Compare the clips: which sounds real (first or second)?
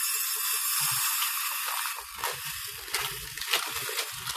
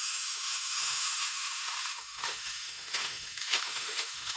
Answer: first